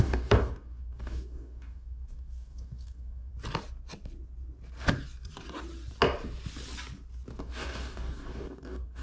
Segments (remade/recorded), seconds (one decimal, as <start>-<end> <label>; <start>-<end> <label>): 0.0-3.3 remade; 3.3-7.4 recorded; 7.4-9.0 remade